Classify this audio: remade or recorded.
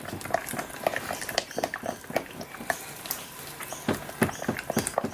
recorded